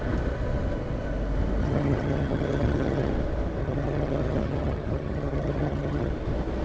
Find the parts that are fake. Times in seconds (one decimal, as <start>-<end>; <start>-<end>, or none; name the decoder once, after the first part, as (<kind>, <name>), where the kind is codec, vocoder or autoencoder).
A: 1.6-3.1 (vocoder, HiFi-GAN); 3.6-6.1